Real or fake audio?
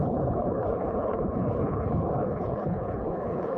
fake